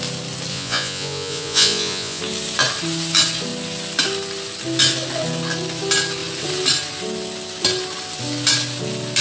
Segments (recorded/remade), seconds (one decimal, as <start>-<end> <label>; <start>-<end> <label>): 0.0-0.5 recorded; 0.5-2.2 remade; 2.2-9.2 recorded